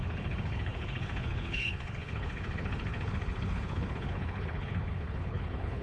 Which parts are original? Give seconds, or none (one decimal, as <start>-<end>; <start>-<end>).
none